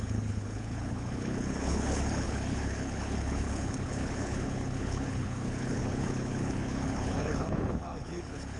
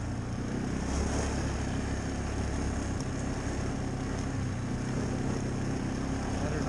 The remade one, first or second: first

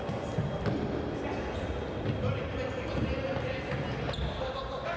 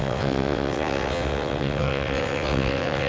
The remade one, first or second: second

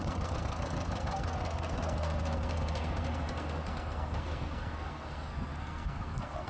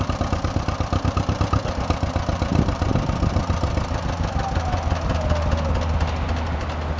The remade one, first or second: first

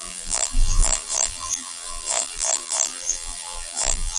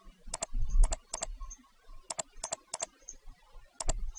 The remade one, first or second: first